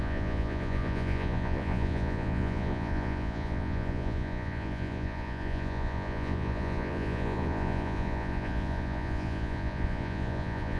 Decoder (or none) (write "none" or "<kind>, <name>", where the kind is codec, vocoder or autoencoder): vocoder, Vocos